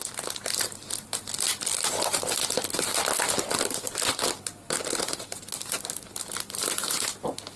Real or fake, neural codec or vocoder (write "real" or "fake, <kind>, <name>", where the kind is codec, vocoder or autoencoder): real